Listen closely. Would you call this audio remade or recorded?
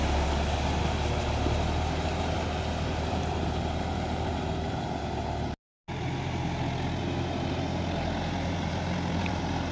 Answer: recorded